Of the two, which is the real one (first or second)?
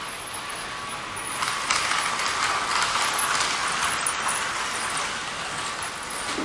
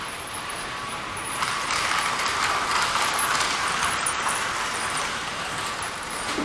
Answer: first